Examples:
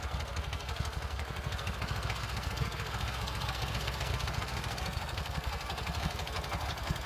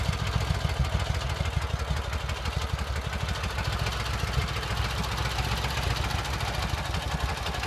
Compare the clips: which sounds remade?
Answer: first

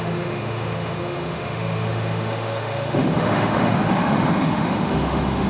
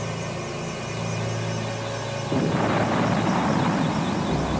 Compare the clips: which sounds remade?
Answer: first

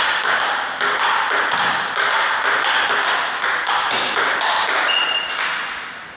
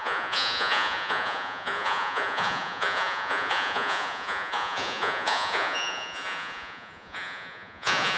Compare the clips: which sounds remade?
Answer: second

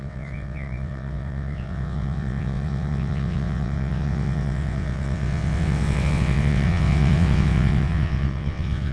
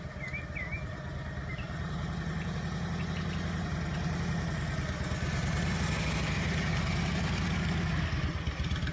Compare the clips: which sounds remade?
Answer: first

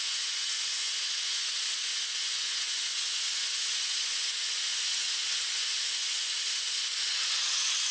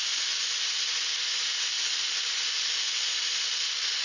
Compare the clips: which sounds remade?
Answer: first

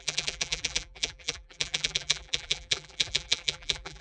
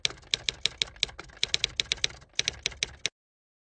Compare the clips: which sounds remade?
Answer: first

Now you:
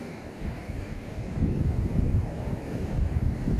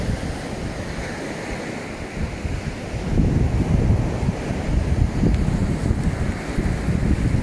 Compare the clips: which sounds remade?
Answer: first